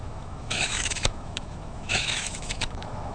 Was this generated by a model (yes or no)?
yes